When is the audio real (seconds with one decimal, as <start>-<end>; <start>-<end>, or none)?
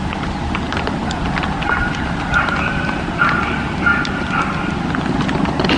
0.0-5.8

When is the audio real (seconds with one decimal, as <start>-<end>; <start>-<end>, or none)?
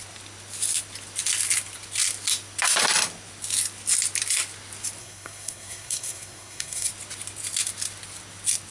0.0-5.0; 6.9-8.7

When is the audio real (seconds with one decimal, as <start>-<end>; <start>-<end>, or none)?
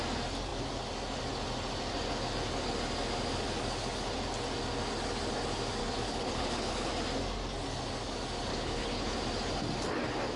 0.0-5.8; 6.9-8.5; 9.2-10.4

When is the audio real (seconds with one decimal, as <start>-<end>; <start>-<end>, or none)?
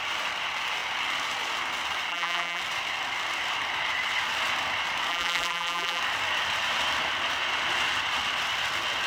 0.0-2.1; 2.6-5.1; 6.0-9.1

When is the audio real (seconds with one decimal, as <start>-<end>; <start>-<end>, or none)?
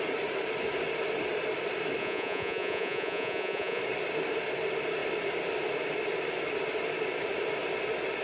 0.0-2.0; 3.8-8.2